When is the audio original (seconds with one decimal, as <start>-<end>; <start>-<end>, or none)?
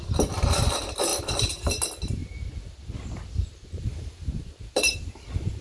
0.0-2.2